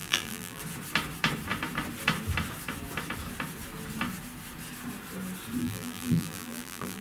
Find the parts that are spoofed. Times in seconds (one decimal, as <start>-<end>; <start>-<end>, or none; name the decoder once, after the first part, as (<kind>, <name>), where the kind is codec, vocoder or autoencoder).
0.0-0.6 (vocoder, BigVGAN v2); 5.6-7.0